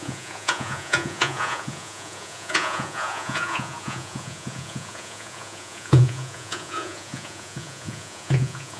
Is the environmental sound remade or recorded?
remade